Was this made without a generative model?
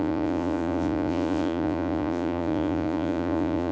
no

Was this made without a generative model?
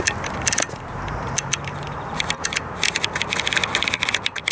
yes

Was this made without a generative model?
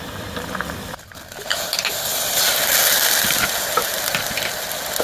yes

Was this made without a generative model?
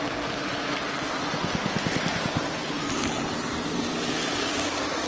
yes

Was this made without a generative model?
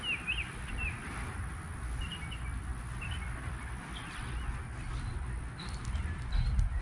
yes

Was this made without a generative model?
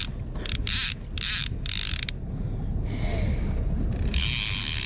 yes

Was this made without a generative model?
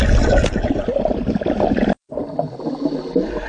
yes